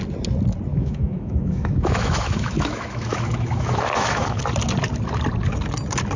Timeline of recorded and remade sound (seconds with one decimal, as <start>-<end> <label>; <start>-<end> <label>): 0.0-0.7 recorded; 0.7-4.4 remade; 4.4-6.2 recorded